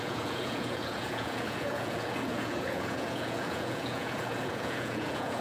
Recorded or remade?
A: remade